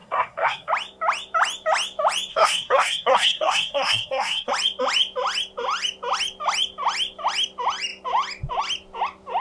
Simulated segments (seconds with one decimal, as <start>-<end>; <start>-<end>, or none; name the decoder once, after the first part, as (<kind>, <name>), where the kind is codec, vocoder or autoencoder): 0.0-0.7 (codec, SNAC); 2.3-4.5